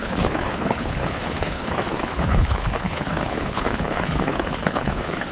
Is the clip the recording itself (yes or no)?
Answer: no